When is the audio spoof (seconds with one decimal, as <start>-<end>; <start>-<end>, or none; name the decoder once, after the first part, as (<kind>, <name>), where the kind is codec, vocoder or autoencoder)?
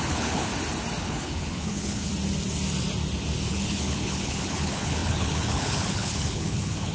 0.0-0.5 (codec, HILCodec); 1.0-2.1; 3.5-6.9